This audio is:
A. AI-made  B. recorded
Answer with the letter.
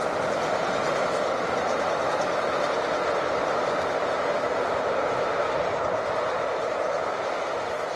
B